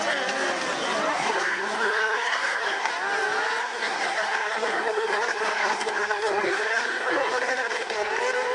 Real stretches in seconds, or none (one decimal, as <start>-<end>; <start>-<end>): 0.0-1.1; 2.9-3.6; 8.1-8.5